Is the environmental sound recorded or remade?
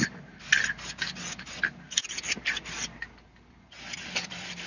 recorded